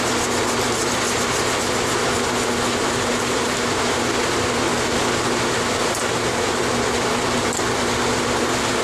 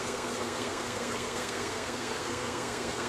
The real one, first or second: first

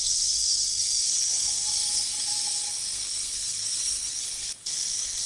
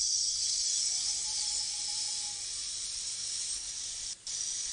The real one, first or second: second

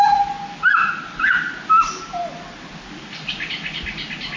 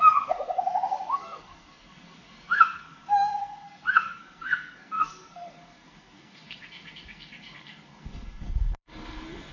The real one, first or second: first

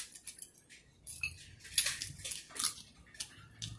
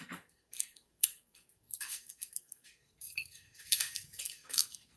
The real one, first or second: first